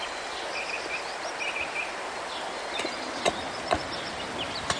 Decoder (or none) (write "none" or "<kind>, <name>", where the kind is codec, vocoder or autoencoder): none